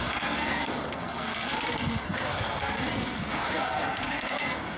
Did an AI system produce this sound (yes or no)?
yes